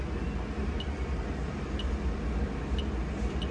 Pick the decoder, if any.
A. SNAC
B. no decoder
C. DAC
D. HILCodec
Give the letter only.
B